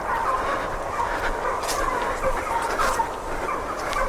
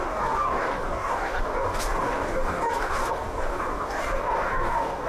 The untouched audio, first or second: first